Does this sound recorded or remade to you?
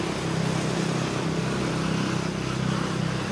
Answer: recorded